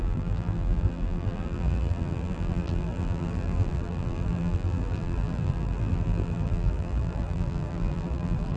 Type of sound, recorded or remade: remade